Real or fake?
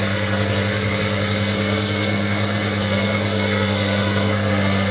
fake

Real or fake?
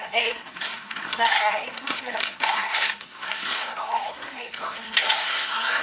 fake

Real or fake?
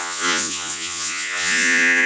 fake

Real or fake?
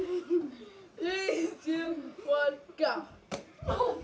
real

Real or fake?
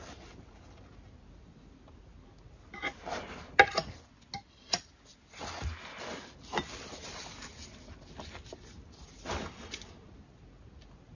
real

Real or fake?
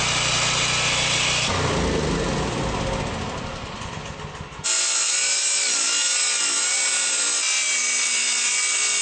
real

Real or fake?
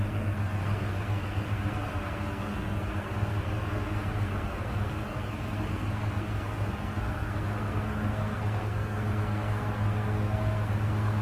fake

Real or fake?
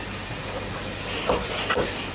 real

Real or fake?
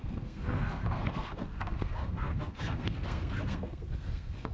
fake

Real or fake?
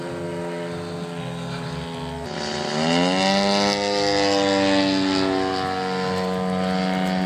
real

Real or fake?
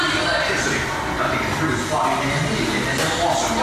real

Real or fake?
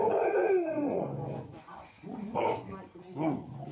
fake